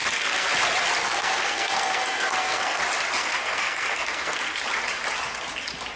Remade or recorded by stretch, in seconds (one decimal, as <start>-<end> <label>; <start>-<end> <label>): 0.0-0.5 remade; 0.5-1.0 recorded; 1.0-2.8 remade; 2.8-3.2 recorded; 3.2-4.6 remade; 4.6-6.0 recorded